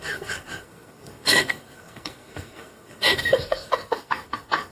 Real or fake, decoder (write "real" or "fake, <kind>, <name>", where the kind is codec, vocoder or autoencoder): fake, codec, SNAC